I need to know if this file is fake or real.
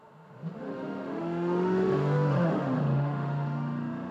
fake